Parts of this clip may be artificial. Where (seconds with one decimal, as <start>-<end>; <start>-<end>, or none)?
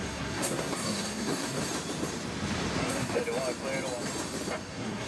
0.0-1.6; 2.8-3.2; 4.6-5.1